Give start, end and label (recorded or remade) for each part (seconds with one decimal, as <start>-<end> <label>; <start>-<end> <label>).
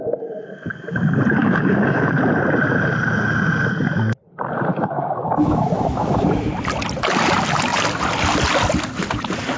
0.0-1.4 recorded; 1.4-2.2 remade; 2.2-4.7 recorded; 4.7-6.5 remade; 6.5-9.6 recorded